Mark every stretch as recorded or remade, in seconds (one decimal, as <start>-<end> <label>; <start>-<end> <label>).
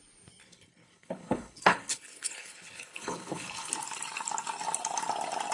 0.0-0.4 recorded; 0.4-3.7 remade; 3.7-5.5 recorded